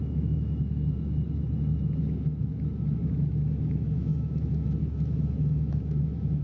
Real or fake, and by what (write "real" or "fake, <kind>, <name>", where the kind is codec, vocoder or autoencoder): fake, autoencoder, DAC-VAE